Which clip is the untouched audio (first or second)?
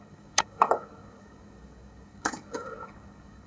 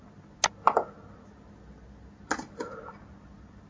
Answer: second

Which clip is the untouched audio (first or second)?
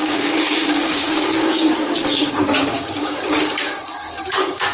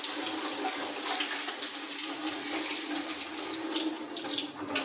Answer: second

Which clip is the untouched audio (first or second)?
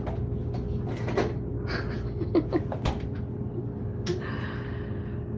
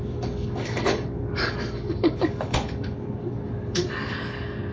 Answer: first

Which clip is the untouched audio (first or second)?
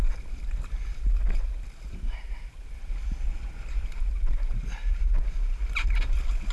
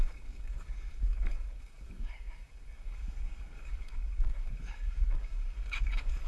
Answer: first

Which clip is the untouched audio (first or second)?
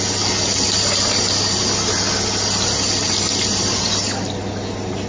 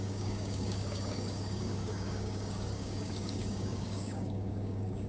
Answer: first